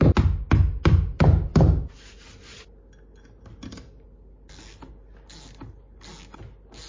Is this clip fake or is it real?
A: real